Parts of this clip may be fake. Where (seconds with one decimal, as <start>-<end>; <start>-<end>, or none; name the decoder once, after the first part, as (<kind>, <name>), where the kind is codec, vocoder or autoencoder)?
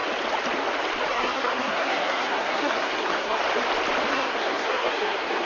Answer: 1.1-3.4 (codec, SNAC); 4.1-5.5